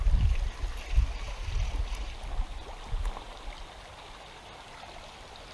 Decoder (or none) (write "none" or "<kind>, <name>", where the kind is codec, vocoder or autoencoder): none